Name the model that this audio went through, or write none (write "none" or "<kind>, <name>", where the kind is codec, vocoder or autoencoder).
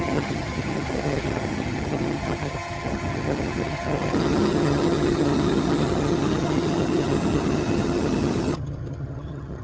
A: vocoder, HiFi-GAN